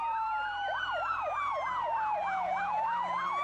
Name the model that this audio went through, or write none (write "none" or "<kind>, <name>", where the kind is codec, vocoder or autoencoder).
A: vocoder, BigVGAN v2